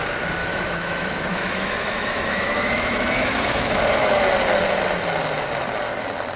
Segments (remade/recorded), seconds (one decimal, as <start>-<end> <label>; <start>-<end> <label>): 0.0-0.4 recorded; 0.4-4.2 remade; 4.2-6.4 recorded